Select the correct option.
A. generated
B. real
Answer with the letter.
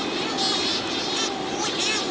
B